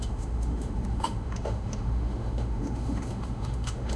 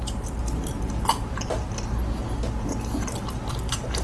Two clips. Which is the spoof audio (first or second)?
first